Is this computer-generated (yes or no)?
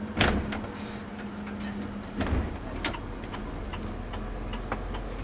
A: no